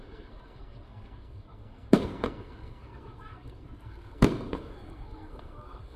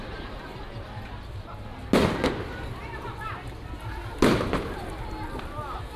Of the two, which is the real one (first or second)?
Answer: second